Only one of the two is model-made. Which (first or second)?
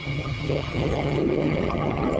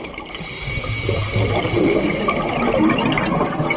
first